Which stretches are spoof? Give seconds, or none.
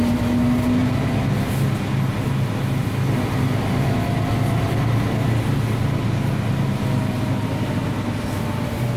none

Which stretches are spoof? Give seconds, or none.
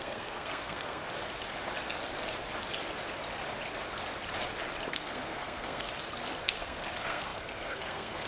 0.0-1.0 (codec, SNAC); 4.9-5.9; 6.4-8.3